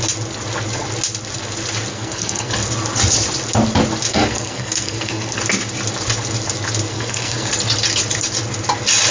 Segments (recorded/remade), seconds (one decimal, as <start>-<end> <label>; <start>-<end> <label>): 0.0-1.9 recorded; 1.9-2.5 remade; 2.5-4.1 recorded; 4.1-5.4 remade; 5.4-6.9 recorded; 6.9-7.5 remade; 7.5-9.1 recorded